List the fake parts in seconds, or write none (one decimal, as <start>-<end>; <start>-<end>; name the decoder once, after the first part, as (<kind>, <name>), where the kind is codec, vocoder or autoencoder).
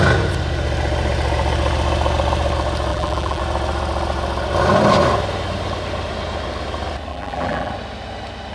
2.9-3.4 (vocoder, BigVGAN v2); 7.1-7.7